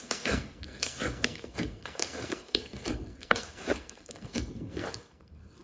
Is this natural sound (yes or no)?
no